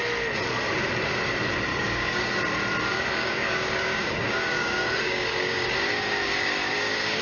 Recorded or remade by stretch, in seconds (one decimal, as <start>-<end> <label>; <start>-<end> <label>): 0.0-1.7 recorded; 1.7-2.2 remade; 2.2-2.9 recorded; 2.9-7.2 remade